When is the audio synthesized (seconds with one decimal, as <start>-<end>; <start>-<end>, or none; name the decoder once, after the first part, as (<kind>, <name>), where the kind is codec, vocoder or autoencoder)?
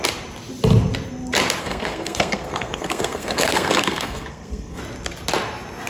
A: 1.6-4.8 (codec, SNAC)